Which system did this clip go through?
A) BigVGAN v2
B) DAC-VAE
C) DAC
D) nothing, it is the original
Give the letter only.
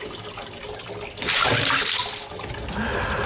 D